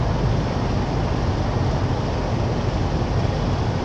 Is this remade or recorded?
recorded